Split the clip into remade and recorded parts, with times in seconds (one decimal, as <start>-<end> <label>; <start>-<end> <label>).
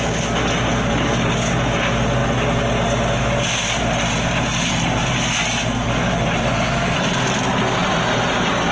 0.0-8.7 recorded